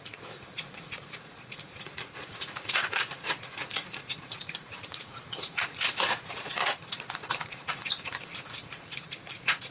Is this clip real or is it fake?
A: fake